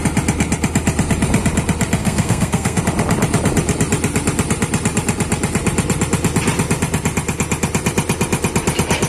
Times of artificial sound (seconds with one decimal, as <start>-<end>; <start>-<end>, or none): 2.0-2.8